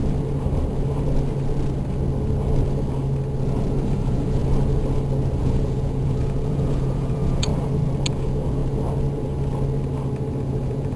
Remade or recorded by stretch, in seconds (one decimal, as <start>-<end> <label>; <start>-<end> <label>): 0.0-3.9 recorded; 3.9-4.4 remade; 4.4-5.4 recorded; 5.4-7.5 remade; 7.5-8.1 recorded; 8.1-8.6 remade; 8.6-10.4 recorded; 10.4-11.0 remade